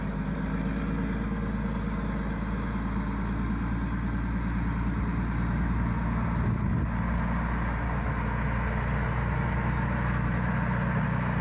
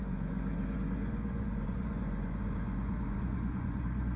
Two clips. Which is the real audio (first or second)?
first